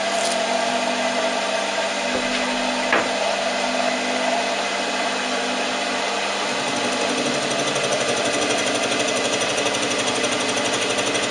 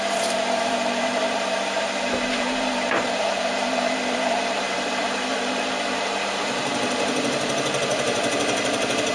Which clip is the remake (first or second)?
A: second